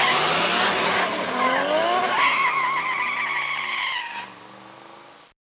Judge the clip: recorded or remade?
recorded